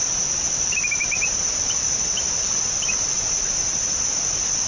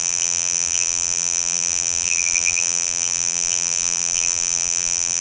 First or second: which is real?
first